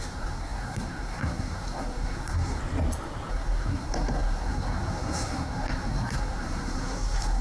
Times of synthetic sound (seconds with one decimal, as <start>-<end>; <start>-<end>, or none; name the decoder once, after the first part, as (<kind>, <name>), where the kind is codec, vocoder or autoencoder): 0.0-2.6 (codec, SNAC); 3.3-7.4